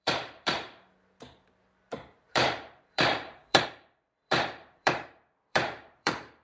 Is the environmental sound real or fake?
fake